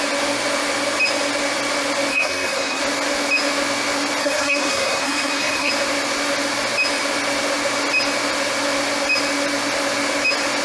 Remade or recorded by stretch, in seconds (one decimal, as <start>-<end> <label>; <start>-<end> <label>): 0.0-2.1 recorded; 2.1-2.8 remade; 2.8-4.2 recorded; 4.2-5.7 remade; 5.7-10.6 recorded